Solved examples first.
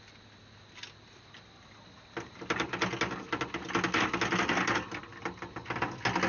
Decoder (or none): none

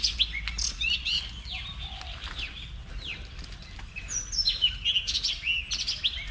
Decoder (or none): none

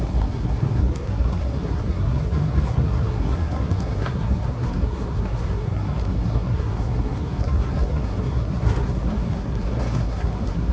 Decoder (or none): codec, SNAC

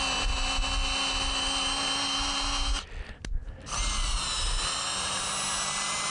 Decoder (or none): none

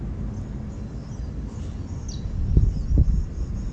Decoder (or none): none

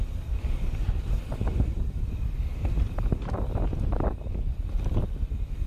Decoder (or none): none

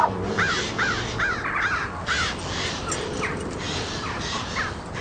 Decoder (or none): none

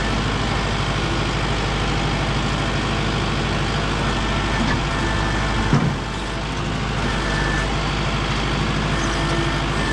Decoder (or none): none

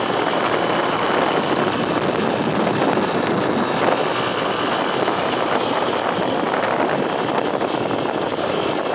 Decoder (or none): none